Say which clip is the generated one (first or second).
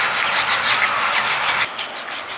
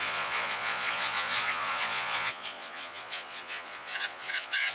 second